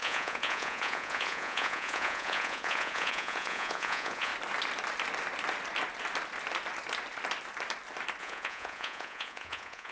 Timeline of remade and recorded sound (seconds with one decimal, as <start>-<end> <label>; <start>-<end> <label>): 0.0-4.3 remade; 4.3-8.2 recorded; 8.2-9.9 remade